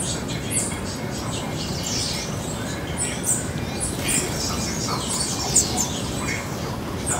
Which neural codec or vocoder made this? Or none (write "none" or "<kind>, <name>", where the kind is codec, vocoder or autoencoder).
none